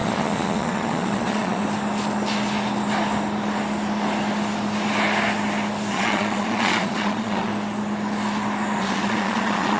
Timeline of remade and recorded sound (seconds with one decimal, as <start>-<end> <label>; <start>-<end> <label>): 0.0-1.6 remade; 1.6-5.9 recorded; 5.9-7.5 remade; 7.5-8.8 recorded; 8.8-9.8 remade